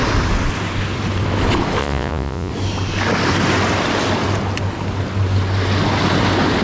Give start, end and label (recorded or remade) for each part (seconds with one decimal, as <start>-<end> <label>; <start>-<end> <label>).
0.0-1.8 recorded; 1.8-2.5 remade; 2.5-6.6 recorded